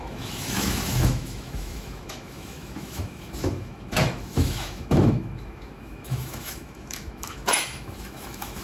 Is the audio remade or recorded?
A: remade